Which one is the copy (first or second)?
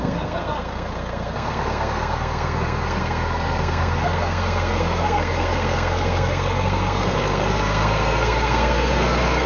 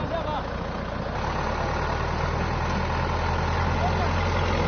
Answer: first